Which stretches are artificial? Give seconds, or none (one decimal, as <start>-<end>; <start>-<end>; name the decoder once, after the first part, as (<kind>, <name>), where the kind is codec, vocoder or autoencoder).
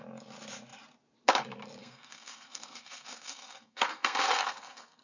1.8-5.0 (codec, SNAC)